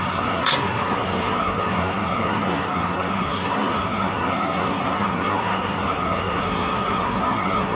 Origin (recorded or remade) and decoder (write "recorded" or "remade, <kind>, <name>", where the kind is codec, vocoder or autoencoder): remade, codec, SNAC